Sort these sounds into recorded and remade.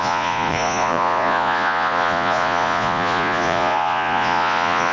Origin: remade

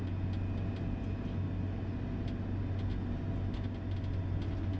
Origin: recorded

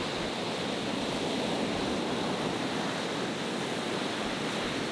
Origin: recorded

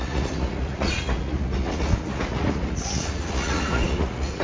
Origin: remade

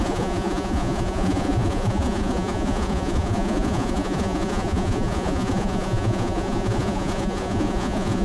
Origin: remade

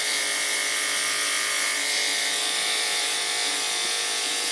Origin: remade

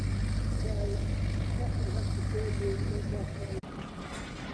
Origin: recorded